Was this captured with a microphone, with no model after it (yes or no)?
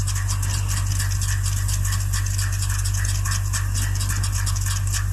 yes